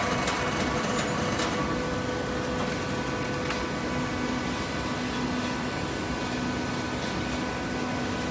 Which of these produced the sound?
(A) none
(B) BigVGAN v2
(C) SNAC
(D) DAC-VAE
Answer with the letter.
A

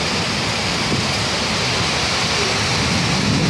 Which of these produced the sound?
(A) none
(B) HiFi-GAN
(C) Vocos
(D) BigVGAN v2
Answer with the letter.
D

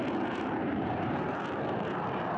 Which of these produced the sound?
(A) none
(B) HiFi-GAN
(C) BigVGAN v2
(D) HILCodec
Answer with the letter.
C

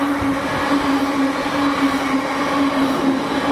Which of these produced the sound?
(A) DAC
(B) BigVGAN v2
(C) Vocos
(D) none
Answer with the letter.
D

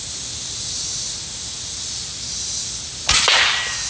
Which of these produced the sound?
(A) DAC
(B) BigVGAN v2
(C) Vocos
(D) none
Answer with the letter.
D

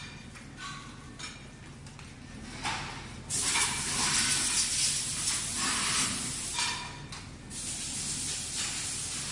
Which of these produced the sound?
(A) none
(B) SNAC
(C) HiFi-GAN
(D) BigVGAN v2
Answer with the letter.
A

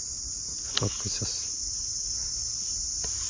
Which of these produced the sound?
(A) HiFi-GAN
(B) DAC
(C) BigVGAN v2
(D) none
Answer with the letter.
D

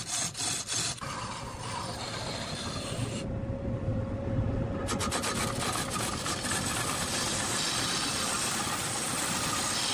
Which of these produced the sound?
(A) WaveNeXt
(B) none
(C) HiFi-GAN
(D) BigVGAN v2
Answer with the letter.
B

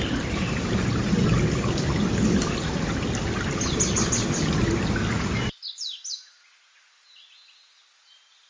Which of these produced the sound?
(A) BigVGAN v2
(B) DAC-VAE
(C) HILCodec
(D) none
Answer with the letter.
D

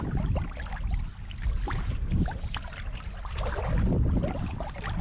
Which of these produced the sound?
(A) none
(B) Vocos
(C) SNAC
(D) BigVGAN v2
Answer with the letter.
A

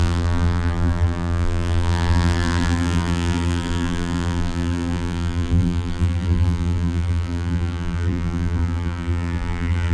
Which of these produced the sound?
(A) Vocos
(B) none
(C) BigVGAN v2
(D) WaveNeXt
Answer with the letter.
C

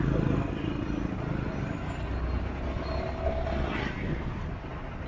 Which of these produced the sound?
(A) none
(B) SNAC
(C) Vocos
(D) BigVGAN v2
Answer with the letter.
A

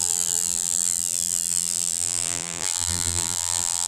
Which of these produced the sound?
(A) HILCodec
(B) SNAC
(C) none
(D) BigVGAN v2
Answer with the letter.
D